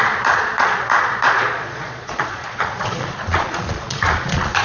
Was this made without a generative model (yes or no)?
no